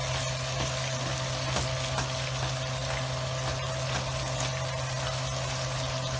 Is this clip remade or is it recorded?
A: recorded